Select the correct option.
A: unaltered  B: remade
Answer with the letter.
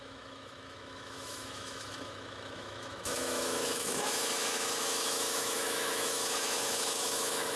B